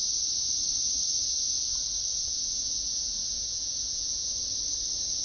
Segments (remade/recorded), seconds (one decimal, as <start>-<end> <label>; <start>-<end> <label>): 0.0-2.1 recorded; 2.1-4.3 remade; 4.3-5.2 recorded